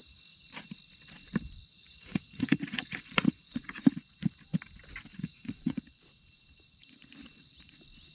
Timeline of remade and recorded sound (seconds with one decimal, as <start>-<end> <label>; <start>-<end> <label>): 0.0-1.7 recorded; 1.7-3.8 remade; 3.8-5.1 recorded; 5.1-5.8 remade; 5.8-8.1 recorded